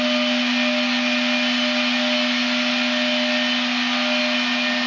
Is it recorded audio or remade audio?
recorded